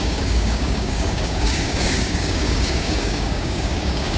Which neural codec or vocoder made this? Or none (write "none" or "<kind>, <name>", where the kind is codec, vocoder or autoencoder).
codec, DAC